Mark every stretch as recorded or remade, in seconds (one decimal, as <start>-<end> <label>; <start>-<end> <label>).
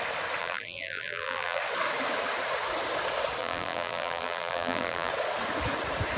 0.0-0.4 recorded; 0.4-1.6 remade; 1.6-3.4 recorded; 3.4-5.1 remade; 5.1-6.2 recorded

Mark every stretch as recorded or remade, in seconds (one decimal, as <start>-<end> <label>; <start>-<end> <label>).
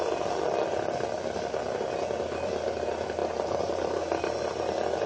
0.0-3.2 recorded; 3.2-4.5 remade; 4.5-5.1 recorded